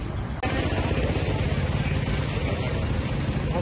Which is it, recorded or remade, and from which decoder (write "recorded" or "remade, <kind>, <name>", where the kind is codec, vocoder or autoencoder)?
recorded